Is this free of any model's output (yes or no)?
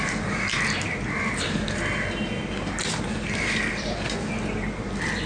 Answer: yes